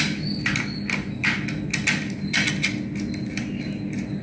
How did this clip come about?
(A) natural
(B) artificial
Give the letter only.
A